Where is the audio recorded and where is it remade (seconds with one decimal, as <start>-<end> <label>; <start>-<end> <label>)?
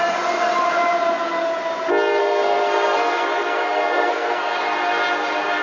0.0-2.2 recorded; 2.2-4.5 remade; 4.5-5.6 recorded